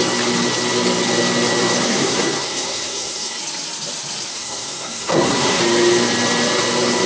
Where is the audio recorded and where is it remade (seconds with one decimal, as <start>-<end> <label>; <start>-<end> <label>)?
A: 0.0-1.8 recorded; 1.8-3.4 remade; 3.4-4.3 recorded; 4.3-5.6 remade; 5.6-7.1 recorded